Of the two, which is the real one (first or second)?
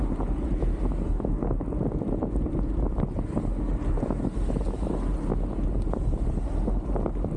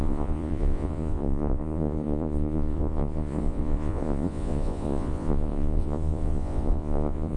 first